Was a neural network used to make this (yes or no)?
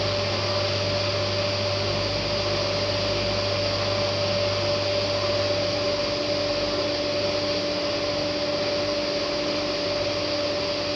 no